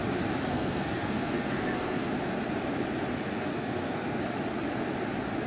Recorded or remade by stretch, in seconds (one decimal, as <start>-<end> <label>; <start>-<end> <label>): 0.0-0.5 recorded; 0.5-2.0 remade; 2.0-3.5 recorded; 3.5-4.2 remade; 4.2-5.5 recorded